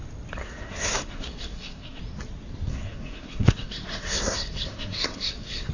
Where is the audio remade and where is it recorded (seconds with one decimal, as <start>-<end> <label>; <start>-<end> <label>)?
0.0-0.4 recorded; 0.4-2.0 remade; 2.0-2.7 recorded; 2.7-5.7 remade